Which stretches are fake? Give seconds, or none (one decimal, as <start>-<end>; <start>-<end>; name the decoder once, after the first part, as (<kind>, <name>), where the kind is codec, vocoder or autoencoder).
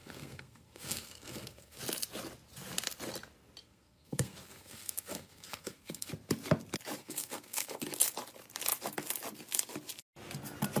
0.0-1.8 (codec, SNAC); 3.6-6.1; 7.0-7.9